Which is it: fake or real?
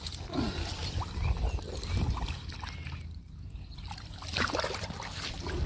real